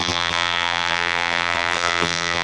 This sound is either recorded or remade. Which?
remade